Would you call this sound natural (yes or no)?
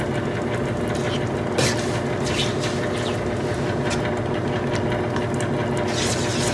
yes